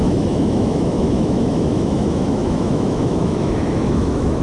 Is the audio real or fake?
fake